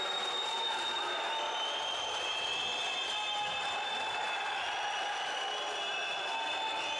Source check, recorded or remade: recorded